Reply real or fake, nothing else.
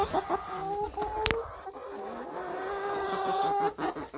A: real